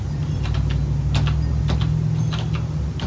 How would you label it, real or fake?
real